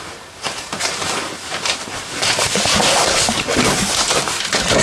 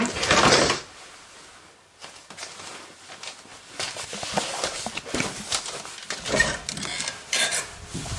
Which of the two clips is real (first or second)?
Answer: second